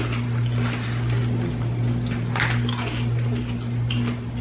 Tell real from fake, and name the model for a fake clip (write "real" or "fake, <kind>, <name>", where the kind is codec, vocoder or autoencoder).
real